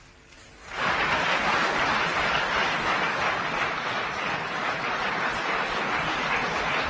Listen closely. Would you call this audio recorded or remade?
recorded